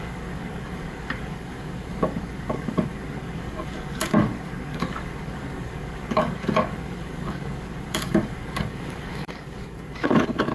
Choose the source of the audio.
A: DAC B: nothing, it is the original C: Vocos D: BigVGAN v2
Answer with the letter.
A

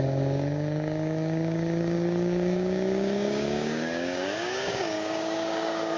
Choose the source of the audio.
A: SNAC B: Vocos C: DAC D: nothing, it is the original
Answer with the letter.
C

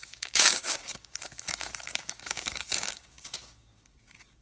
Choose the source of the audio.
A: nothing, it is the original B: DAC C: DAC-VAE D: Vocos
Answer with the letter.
B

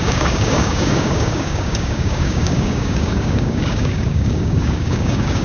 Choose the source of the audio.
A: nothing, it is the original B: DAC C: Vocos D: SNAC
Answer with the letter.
B